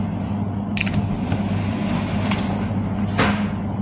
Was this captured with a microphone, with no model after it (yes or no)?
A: yes